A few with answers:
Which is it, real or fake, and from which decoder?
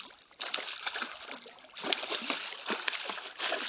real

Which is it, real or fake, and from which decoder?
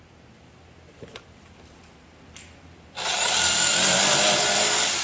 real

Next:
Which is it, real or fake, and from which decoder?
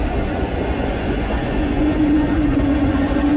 fake, vocoder, Vocos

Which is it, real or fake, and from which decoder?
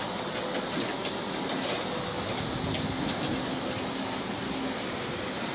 real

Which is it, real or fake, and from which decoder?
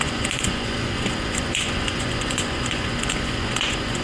fake, vocoder, Vocos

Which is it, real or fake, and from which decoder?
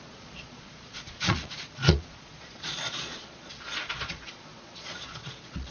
fake, vocoder, Vocos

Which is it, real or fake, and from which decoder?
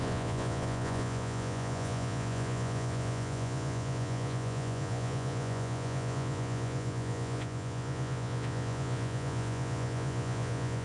fake, vocoder, Vocos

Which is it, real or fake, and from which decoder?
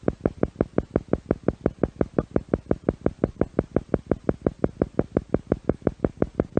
real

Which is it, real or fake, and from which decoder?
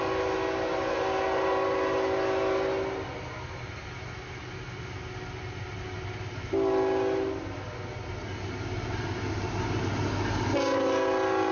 real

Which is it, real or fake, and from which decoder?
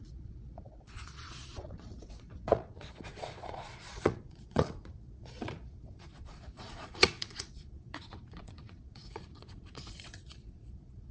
fake, vocoder, Vocos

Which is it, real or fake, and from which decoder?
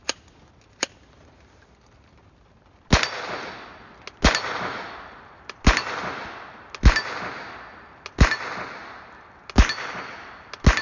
real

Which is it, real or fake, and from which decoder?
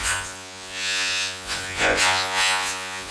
fake, vocoder, Vocos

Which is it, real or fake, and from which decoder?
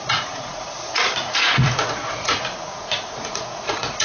fake, vocoder, Vocos